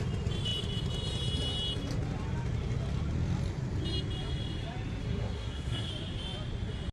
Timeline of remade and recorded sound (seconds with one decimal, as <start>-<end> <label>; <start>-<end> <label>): 0.0-5.0 recorded; 5.0-5.9 remade; 5.9-6.9 recorded